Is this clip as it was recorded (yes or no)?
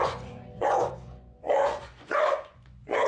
no